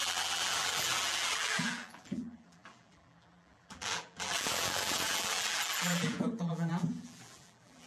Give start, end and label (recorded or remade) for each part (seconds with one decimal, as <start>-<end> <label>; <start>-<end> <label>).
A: 0.0-7.9 remade